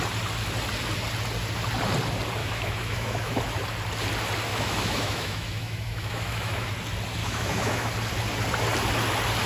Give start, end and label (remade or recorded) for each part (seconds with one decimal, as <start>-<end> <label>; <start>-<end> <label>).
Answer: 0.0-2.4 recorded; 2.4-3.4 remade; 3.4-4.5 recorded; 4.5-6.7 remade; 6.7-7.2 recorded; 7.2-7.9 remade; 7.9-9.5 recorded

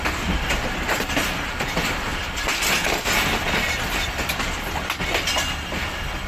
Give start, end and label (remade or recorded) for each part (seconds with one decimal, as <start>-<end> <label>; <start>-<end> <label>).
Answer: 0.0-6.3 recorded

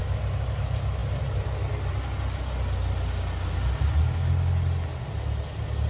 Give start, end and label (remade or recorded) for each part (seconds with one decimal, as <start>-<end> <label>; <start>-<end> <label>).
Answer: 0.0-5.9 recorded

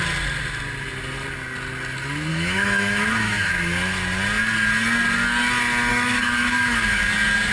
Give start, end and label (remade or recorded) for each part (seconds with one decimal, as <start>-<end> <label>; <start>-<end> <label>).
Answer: 0.0-2.3 recorded; 2.3-3.5 remade; 3.5-5.9 recorded; 5.9-7.0 remade; 7.0-7.5 recorded

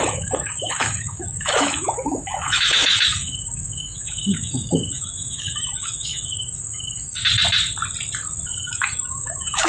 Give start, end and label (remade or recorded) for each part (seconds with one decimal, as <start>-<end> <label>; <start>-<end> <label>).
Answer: 0.0-7.2 remade; 7.2-8.6 recorded; 8.6-9.7 remade

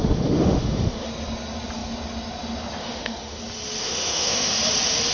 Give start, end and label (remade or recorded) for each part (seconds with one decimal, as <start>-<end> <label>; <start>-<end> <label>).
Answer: 0.0-1.1 remade; 1.1-2.8 recorded; 2.8-3.4 remade; 3.4-3.8 recorded; 3.8-4.5 remade; 4.5-5.1 recorded